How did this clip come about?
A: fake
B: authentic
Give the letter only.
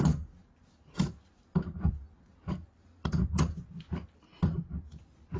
B